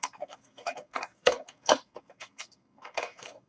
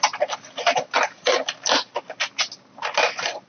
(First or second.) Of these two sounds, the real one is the second